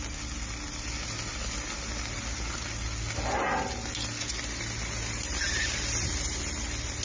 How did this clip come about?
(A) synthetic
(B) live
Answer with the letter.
B